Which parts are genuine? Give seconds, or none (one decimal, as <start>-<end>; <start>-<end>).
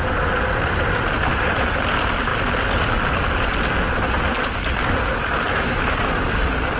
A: 0.0-6.8